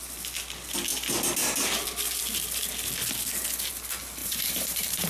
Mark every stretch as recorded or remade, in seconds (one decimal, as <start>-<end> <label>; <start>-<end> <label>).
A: 0.0-4.2 recorded; 4.2-5.1 remade